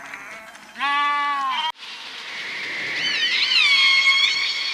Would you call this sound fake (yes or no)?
no